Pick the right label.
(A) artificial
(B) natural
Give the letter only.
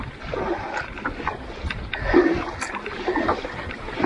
B